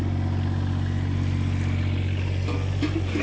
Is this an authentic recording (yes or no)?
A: yes